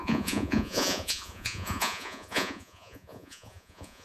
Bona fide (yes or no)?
no